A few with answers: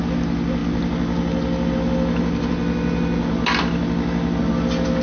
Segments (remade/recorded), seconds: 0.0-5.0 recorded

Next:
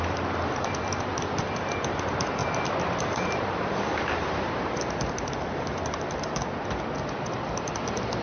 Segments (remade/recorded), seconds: 0.0-2.4 recorded; 2.4-6.0 remade; 6.0-8.2 recorded

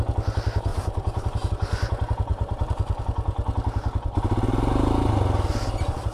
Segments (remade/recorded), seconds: 0.0-0.7 recorded; 0.7-1.5 remade; 1.5-2.3 recorded; 2.3-3.0 remade; 3.0-6.1 recorded